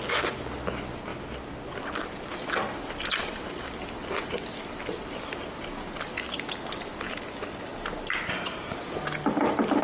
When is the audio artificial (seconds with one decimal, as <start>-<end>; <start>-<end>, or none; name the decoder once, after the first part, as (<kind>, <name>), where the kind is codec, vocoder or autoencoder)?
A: 1.1-5.6 (vocoder, BigVGAN v2)